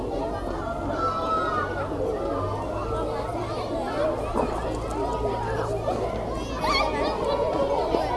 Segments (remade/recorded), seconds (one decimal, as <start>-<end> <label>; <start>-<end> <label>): 0.0-8.2 recorded